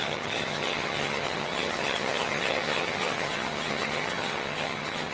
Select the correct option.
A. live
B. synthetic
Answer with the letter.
B